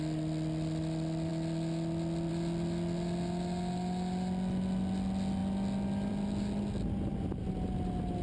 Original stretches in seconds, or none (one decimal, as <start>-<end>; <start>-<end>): 0.0-8.2